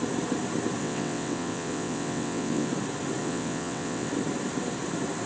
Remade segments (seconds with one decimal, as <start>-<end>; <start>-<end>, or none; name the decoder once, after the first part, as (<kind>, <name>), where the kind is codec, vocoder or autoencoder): 0.8-2.7 (vocoder, WaveNeXt); 3.2-4.1